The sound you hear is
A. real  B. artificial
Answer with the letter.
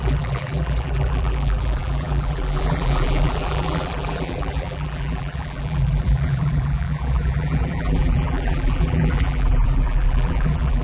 B